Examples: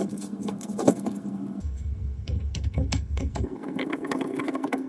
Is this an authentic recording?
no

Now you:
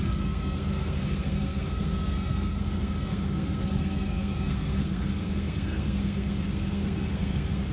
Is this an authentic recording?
no